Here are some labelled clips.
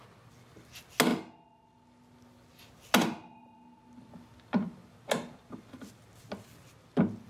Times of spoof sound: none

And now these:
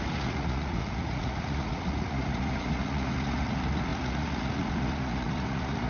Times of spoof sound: 0.0-5.9 (vocoder, Vocos)